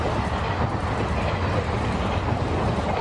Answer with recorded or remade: recorded